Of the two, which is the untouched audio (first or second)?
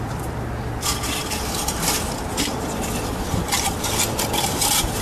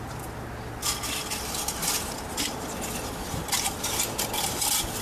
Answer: second